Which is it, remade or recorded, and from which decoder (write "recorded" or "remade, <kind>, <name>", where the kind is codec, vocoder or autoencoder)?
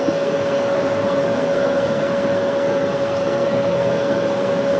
remade, codec, SNAC